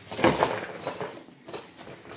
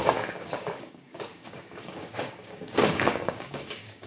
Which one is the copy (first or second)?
second